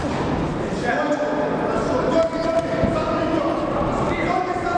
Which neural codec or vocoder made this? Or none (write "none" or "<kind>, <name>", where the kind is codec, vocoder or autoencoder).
none